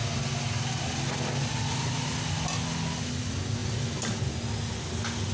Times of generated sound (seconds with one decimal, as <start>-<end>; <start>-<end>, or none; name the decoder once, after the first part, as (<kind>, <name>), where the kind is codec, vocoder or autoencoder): none